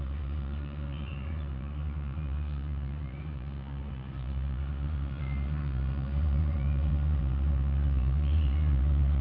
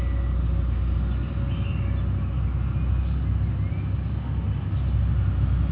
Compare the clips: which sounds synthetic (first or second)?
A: first